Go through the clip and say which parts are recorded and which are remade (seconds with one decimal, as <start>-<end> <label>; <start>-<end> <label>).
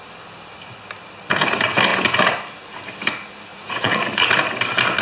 0.0-3.5 recorded; 3.5-4.3 remade; 4.3-5.0 recorded